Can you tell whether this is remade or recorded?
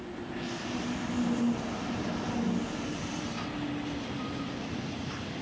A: recorded